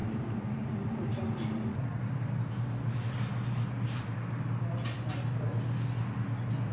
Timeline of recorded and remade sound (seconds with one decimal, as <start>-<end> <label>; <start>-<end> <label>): 0.0-4.0 remade; 4.0-6.7 recorded

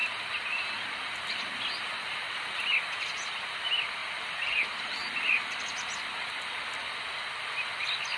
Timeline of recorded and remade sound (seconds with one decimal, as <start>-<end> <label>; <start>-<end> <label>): 0.0-4.0 recorded; 4.0-5.5 remade; 5.5-8.2 recorded